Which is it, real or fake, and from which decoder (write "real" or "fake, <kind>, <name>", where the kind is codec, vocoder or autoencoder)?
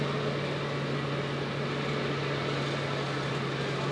real